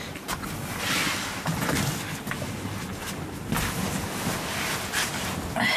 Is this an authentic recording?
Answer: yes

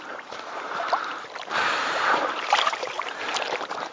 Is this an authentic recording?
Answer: no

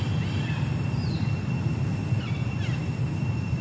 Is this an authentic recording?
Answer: yes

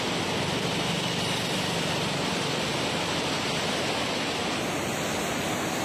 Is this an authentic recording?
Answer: yes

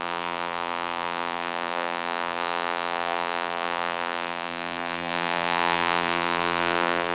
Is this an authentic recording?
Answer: no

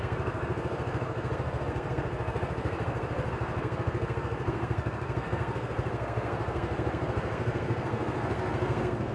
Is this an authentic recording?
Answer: no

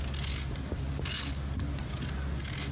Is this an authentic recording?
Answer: yes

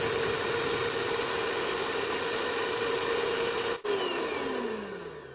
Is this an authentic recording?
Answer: yes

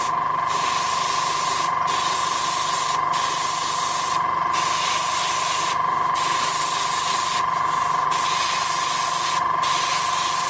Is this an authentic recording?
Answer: yes